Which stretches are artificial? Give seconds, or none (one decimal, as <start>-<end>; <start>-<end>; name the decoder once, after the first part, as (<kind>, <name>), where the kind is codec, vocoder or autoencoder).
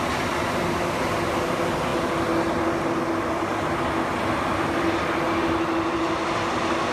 none